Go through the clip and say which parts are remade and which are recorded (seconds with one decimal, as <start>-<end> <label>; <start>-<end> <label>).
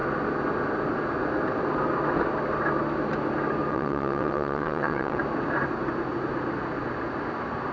0.0-3.7 recorded; 3.7-5.2 remade; 5.2-7.7 recorded